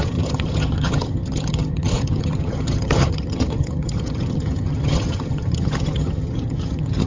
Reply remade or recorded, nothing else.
remade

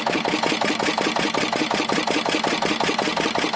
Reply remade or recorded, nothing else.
recorded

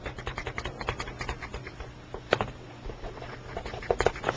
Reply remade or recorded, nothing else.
recorded